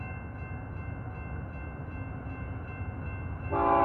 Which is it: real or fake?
real